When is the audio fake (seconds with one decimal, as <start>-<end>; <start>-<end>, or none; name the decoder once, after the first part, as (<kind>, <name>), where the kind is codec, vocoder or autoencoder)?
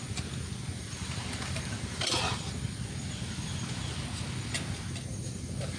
0.7-2.1 (vocoder, BigVGAN v2)